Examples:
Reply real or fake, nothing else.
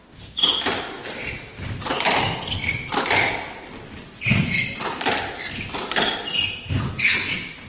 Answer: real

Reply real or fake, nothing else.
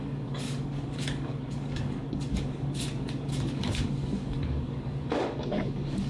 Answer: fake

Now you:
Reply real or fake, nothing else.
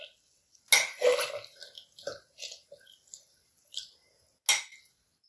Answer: real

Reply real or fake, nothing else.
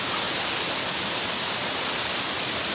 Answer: real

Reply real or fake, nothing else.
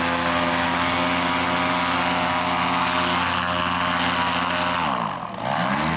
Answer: real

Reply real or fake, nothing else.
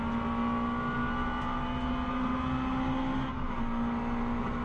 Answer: real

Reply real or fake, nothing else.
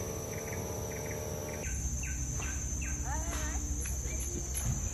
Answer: real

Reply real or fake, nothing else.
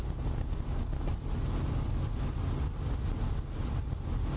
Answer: real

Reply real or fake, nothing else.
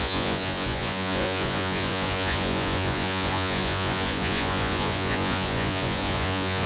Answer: fake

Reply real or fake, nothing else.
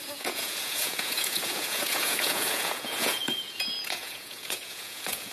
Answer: fake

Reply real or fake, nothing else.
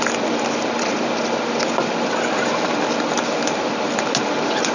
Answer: real